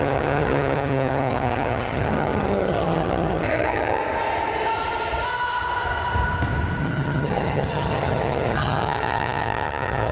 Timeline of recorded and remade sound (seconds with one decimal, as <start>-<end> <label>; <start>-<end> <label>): 0.0-4.0 remade; 4.0-6.8 recorded; 6.8-10.1 remade